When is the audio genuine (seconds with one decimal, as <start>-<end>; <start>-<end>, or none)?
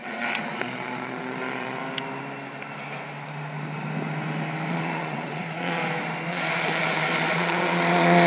1.8-4.7; 5.8-6.3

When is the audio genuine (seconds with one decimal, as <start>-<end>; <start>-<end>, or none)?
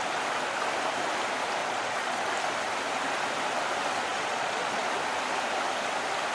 0.0-1.6; 2.2-4.1; 4.8-6.3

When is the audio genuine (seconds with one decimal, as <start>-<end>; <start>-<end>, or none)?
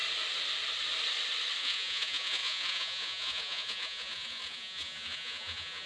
0.0-1.6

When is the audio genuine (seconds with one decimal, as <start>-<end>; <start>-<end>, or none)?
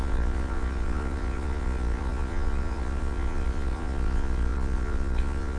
none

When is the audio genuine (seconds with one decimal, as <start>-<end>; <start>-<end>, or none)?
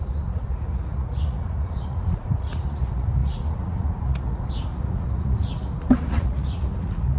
none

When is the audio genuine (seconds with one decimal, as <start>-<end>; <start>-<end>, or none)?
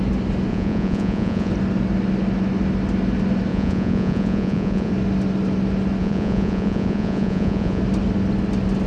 0.0-0.5; 1.5-3.5; 4.9-6.0; 7.8-8.9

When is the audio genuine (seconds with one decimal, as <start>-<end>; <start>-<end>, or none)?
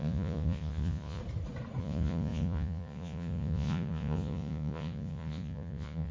1.2-1.8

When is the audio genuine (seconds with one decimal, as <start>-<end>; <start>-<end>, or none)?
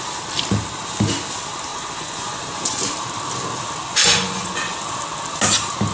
0.0-1.7; 2.9-3.8; 4.8-5.9